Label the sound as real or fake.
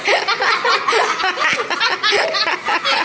real